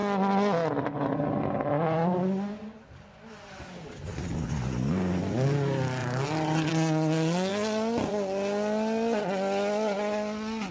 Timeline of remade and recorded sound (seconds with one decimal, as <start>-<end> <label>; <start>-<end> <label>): 0.0-6.0 recorded; 6.0-6.7 remade; 6.7-10.7 recorded